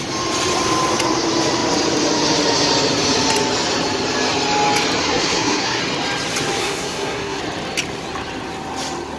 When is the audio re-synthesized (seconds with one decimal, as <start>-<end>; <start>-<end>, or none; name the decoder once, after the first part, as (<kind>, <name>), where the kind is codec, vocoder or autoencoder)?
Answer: 5.0-5.8 (codec, SNAC); 6.6-7.4